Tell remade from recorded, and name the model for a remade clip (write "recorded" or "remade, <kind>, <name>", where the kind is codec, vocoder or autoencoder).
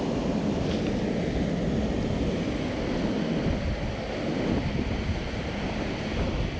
recorded